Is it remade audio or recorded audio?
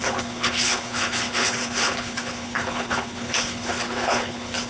remade